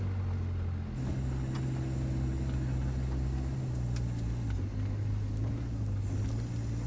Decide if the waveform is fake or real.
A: real